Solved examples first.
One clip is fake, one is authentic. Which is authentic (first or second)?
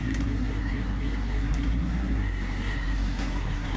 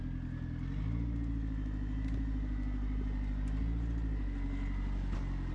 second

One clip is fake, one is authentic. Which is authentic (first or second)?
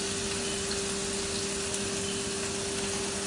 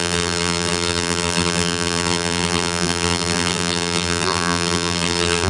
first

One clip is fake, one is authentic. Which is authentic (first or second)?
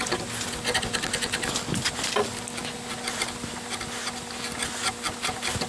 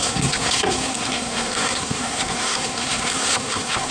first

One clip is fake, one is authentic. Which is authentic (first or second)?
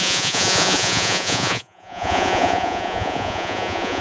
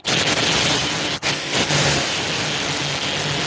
second